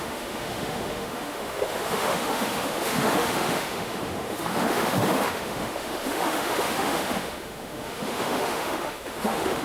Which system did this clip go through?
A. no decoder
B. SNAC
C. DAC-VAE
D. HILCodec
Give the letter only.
C